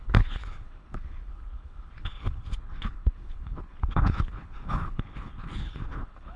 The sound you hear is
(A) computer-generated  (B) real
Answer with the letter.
A